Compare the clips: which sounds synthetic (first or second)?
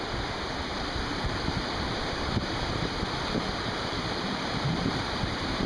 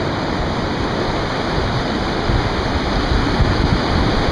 first